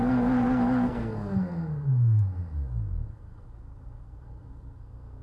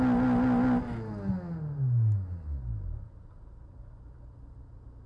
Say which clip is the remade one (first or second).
first